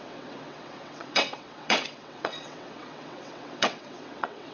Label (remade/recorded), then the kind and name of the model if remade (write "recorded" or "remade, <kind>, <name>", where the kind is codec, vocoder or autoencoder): remade, vocoder, WaveNeXt